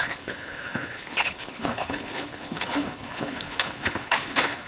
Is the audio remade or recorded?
remade